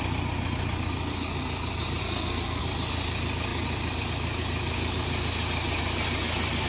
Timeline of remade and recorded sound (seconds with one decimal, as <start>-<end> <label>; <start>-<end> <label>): 0.0-2.0 recorded; 2.0-2.6 remade; 2.6-6.7 recorded

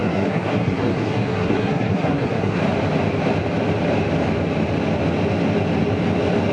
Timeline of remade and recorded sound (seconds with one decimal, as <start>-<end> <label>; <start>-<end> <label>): 0.0-2.6 remade; 2.6-6.5 recorded